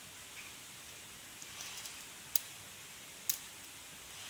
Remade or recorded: recorded